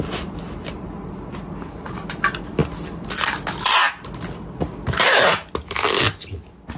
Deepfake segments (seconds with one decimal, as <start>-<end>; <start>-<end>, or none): none